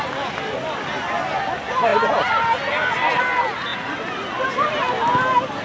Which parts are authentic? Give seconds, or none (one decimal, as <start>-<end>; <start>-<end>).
0.0-5.6